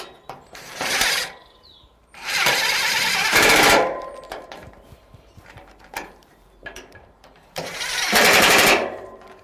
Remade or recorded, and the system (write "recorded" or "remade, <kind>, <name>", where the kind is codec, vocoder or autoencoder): remade, vocoder, BigVGAN v2